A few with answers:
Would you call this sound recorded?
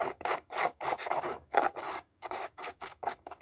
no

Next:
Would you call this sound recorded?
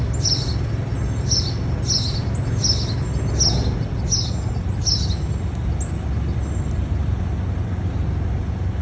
yes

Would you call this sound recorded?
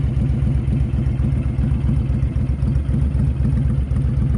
yes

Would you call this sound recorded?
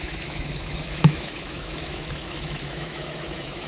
no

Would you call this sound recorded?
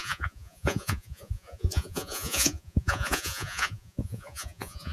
no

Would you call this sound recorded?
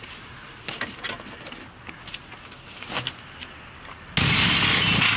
yes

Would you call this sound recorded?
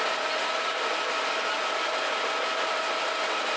yes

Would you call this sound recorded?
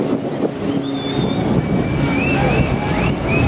yes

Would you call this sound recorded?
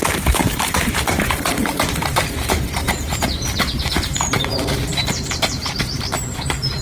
no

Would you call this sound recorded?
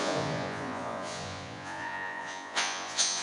no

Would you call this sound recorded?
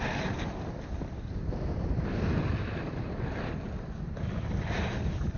yes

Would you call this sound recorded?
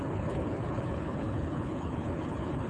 no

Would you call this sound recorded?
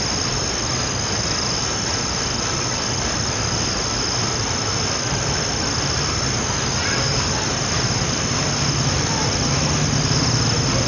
yes